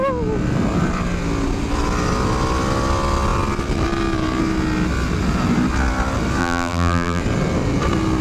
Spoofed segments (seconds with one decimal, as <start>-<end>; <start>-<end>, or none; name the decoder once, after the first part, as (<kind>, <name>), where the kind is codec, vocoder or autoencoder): 6.4-7.2 (vocoder, BigVGAN v2)